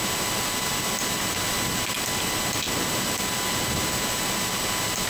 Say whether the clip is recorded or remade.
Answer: recorded